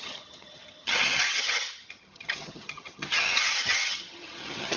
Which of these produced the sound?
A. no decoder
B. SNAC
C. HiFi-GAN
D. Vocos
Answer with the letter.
C